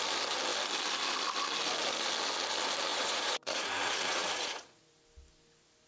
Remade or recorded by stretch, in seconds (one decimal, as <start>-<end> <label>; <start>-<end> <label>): 0.0-2.9 recorded; 2.9-4.9 remade; 4.9-5.9 recorded